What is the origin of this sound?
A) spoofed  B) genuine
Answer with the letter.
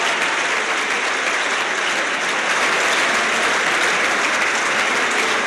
B